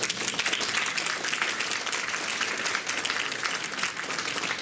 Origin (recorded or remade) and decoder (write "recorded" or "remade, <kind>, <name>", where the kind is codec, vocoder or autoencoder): recorded